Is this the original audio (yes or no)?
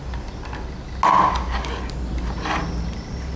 yes